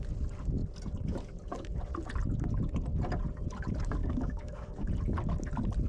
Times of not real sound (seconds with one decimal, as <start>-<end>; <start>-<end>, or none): 4.0-4.9